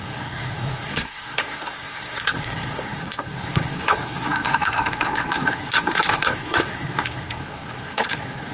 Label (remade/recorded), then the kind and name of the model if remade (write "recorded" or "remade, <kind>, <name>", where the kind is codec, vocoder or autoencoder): remade, codec, SNAC